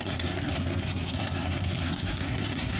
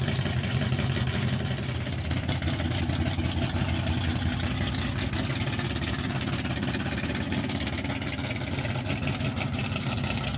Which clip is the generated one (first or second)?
first